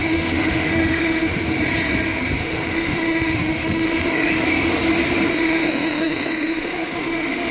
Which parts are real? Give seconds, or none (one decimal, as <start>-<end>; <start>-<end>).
1.4-2.4; 4.3-5.3